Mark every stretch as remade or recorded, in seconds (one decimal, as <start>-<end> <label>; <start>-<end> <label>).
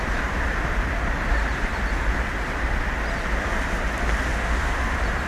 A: 0.0-4.3 recorded; 4.3-4.8 remade; 4.8-5.3 recorded